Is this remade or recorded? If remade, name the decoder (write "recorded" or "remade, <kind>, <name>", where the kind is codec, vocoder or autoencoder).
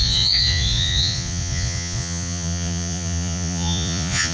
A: remade, vocoder, Vocos